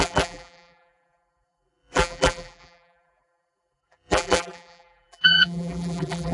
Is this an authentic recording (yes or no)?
no